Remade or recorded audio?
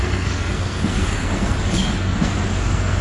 remade